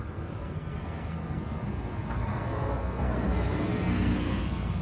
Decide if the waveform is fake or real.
fake